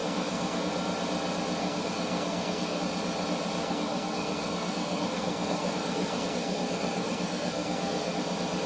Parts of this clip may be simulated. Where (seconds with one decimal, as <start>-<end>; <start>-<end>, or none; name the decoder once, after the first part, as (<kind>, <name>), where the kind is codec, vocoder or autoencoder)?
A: 0.0-0.7 (codec, SNAC); 1.6-2.8; 3.6-8.2